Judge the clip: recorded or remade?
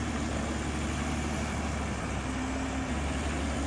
recorded